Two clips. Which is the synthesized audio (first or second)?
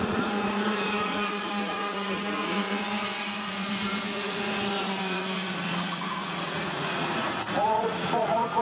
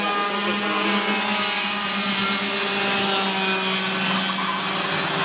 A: first